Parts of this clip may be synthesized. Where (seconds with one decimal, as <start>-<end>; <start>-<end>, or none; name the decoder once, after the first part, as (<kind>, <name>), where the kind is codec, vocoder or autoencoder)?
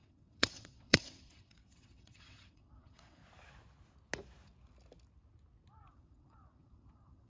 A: 0.0-3.2 (vocoder, WaveNeXt); 5.9-7.3